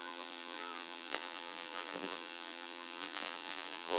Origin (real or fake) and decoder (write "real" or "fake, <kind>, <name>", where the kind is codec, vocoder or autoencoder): fake, vocoder, BigVGAN v2